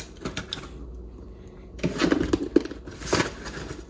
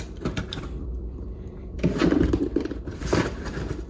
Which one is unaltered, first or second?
first